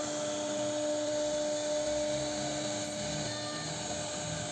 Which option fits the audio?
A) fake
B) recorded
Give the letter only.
B